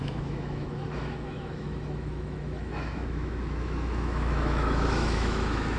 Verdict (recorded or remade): remade